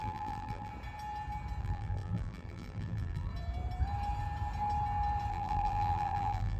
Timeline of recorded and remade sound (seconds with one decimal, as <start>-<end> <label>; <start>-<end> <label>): 0.0-0.7 remade; 0.7-1.6 recorded; 1.6-3.3 remade; 3.3-5.3 recorded; 5.3-6.6 remade